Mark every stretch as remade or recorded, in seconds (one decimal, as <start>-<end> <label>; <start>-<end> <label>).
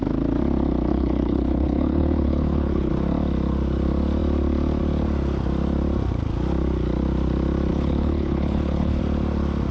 0.0-0.9 recorded; 0.9-2.9 remade; 2.9-7.7 recorded; 7.7-9.0 remade; 9.0-9.7 recorded